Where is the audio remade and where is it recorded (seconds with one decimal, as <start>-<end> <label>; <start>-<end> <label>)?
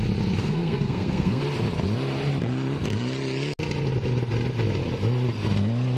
0.0-0.4 recorded; 0.4-1.4 remade; 1.4-6.0 recorded